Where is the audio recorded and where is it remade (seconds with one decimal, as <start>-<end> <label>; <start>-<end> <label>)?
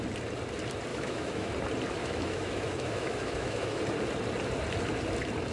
0.0-0.9 recorded; 0.9-1.5 remade; 1.5-2.0 recorded; 2.0-3.8 remade; 3.8-5.5 recorded